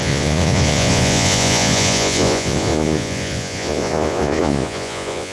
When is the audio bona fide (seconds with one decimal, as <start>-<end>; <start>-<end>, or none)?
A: none